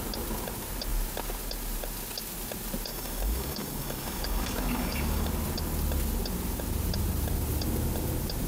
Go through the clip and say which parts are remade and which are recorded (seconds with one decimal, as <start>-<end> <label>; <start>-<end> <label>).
0.0-2.9 recorded; 2.9-5.3 remade; 5.3-8.5 recorded